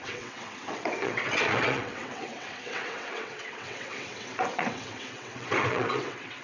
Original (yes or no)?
no